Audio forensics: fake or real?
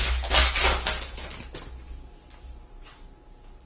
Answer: real